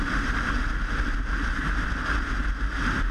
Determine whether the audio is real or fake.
real